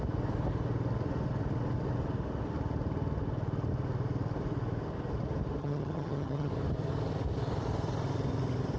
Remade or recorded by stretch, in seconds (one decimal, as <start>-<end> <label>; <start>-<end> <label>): 0.0-5.6 recorded; 5.6-6.5 remade; 6.5-8.8 recorded